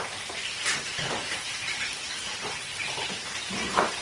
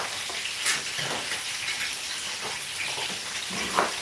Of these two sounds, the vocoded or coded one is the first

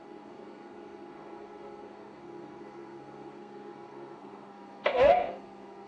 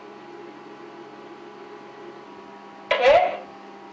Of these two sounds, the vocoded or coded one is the first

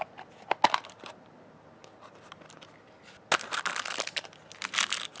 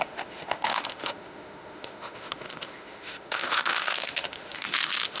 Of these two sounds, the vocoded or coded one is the second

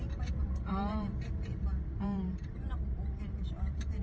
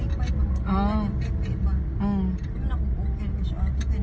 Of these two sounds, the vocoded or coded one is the first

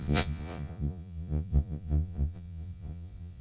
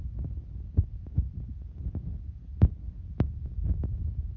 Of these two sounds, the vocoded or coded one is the first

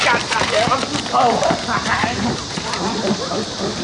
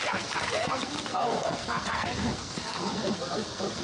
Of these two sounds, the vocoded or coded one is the second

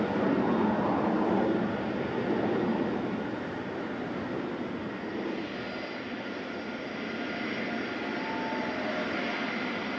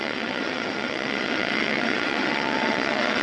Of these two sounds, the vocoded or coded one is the second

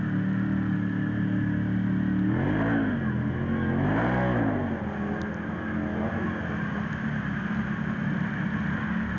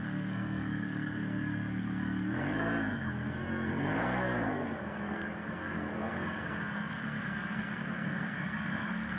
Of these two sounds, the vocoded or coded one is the second